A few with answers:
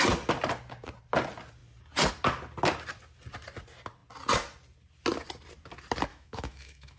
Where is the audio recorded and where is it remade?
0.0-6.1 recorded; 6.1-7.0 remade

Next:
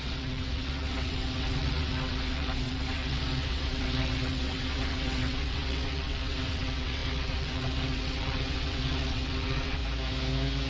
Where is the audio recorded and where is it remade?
0.0-9.8 remade; 9.8-10.7 recorded

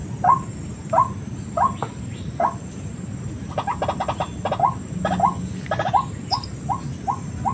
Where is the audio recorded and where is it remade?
0.0-7.5 recorded

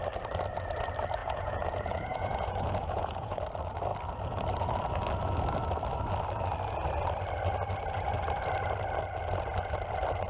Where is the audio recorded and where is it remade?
0.0-1.2 recorded; 1.2-3.4 remade; 3.4-10.3 recorded